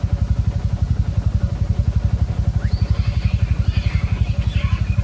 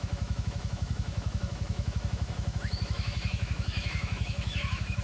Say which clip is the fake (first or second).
second